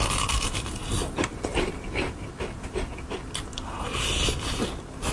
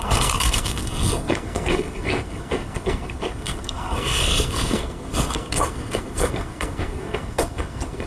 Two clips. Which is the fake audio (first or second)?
second